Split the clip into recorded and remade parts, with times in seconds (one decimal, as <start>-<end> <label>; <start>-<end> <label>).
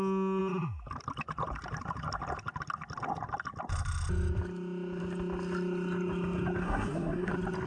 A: 0.0-6.6 recorded; 6.6-7.3 remade; 7.3-7.7 recorded